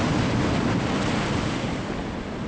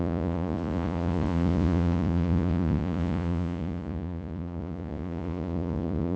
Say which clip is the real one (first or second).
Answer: first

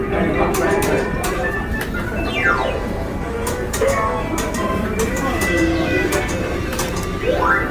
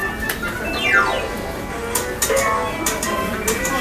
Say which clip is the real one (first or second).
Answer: second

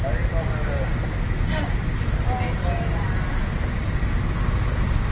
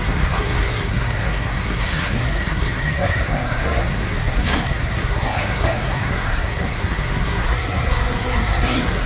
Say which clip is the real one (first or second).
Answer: first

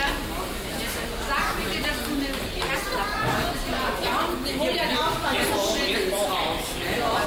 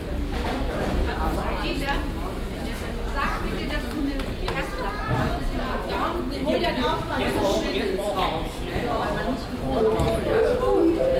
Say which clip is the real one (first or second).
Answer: first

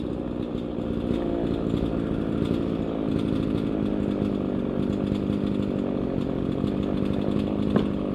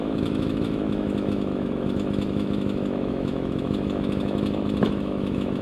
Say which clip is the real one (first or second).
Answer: first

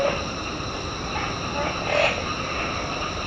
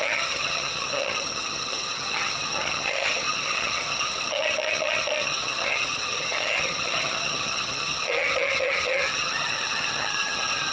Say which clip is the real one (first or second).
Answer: first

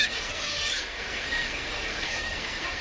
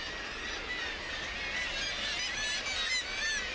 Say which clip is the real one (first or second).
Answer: second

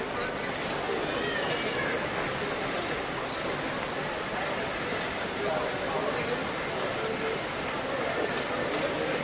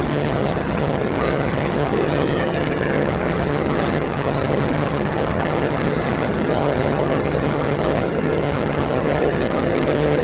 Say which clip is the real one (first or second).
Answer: first